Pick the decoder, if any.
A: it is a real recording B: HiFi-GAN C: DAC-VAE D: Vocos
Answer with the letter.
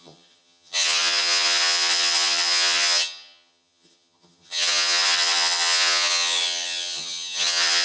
B